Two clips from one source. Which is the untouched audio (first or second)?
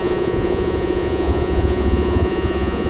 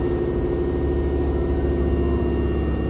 second